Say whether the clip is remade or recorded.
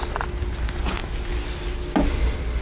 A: recorded